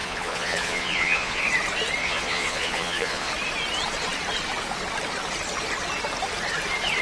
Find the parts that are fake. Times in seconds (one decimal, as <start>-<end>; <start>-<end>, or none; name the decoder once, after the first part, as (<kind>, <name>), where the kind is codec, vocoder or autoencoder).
0.0-1.4 (vocoder, Vocos); 2.0-3.3